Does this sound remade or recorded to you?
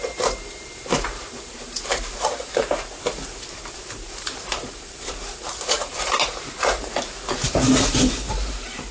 remade